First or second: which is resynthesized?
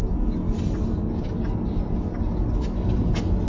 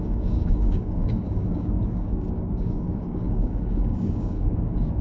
second